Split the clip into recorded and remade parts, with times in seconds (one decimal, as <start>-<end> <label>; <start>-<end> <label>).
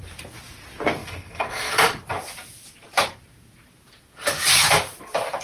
0.0-1.0 recorded; 1.0-1.7 remade; 1.7-5.4 recorded